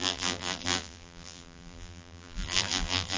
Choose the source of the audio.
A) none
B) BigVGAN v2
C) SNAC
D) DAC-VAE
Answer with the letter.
B